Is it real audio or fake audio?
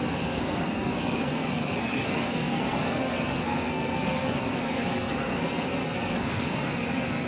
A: fake